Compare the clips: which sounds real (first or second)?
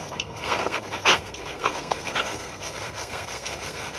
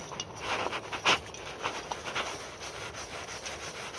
second